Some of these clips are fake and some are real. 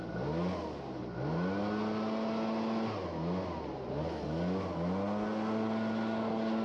real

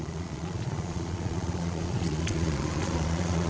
fake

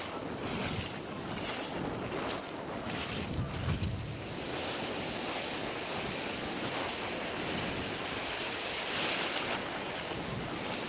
real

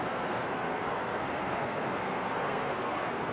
fake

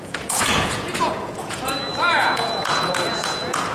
fake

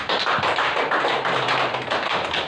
fake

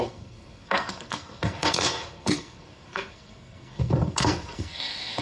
fake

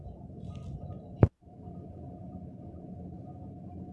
real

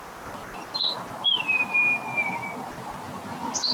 real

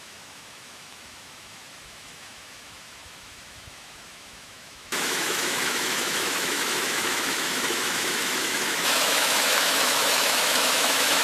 fake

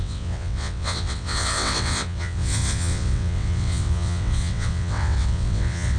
fake